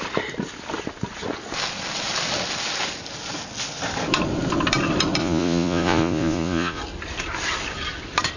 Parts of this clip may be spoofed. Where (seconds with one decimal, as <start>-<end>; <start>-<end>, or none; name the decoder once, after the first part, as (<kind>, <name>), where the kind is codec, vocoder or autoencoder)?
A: 5.2-6.8 (vocoder, Vocos)